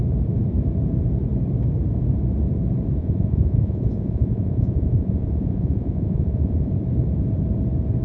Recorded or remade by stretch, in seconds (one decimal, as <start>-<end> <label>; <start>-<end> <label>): 0.0-3.0 recorded; 3.0-6.7 remade; 6.7-8.0 recorded